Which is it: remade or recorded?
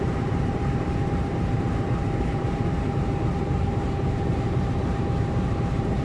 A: remade